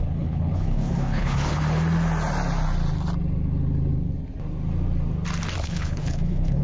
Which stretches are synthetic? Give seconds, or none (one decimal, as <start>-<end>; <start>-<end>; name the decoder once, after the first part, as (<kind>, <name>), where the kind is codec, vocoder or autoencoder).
0.0-1.6 (codec, HILCodec); 5.6-6.6